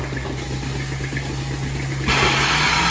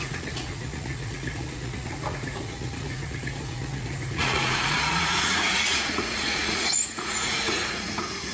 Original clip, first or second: first